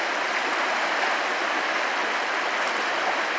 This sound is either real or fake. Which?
real